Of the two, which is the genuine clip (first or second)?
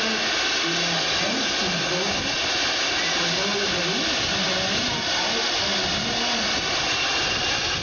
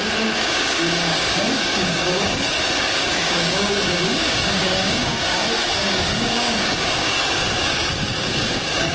first